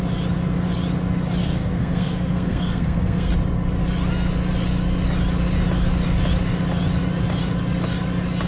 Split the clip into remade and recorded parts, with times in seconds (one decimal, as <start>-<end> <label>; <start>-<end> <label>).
0.0-1.4 recorded; 1.4-3.3 remade; 3.3-8.5 recorded